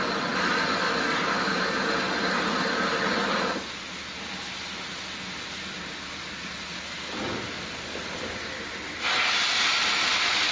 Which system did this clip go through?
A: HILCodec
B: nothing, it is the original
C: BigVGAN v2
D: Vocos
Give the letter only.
B